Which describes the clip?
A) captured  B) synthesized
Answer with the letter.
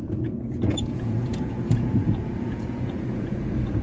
B